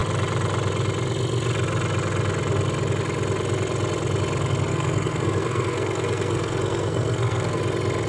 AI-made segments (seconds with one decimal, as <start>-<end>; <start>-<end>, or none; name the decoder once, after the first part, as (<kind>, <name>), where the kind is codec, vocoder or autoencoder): 4.7-7.6 (codec, SNAC)